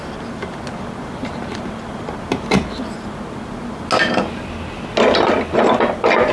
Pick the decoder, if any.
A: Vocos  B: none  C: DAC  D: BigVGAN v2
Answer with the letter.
B